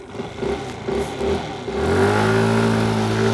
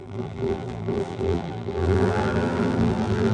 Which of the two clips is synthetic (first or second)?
second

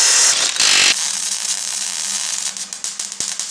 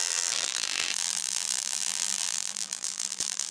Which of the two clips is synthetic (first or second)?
second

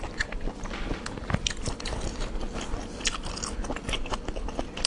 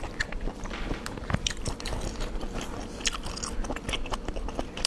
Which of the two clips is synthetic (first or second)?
first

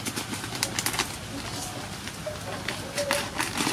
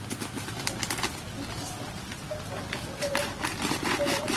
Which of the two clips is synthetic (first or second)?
second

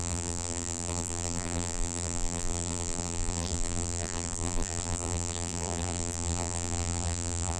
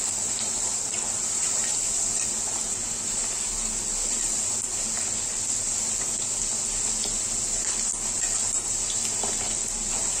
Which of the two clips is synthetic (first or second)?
first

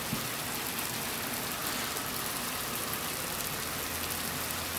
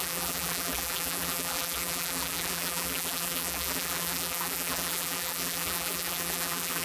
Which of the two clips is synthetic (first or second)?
second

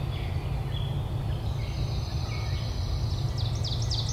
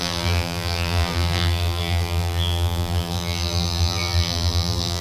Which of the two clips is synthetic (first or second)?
second